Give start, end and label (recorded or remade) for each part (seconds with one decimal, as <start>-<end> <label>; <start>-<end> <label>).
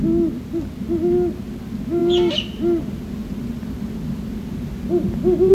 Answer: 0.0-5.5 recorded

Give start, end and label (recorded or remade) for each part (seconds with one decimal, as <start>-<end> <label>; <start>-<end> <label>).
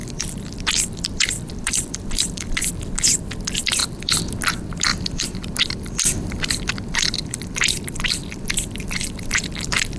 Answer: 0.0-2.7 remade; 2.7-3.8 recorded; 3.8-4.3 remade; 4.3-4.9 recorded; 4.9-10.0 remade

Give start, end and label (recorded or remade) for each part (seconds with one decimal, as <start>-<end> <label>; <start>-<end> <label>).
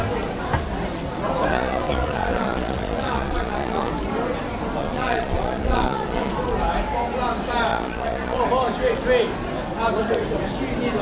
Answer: 0.0-1.5 recorded; 1.5-3.9 remade; 3.9-4.8 recorded; 4.8-6.3 remade; 6.3-7.7 recorded; 7.7-8.4 remade; 8.4-11.0 recorded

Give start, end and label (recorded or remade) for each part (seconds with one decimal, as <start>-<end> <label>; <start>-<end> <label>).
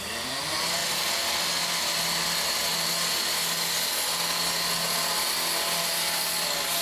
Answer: 0.0-6.8 recorded